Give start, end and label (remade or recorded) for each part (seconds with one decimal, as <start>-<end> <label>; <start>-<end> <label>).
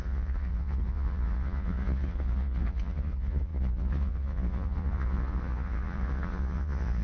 0.0-7.0 remade